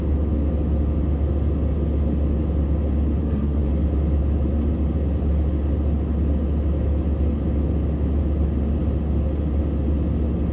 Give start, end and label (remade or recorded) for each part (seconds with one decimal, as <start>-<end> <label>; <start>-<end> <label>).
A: 0.0-3.2 recorded; 3.2-3.7 remade; 3.7-10.5 recorded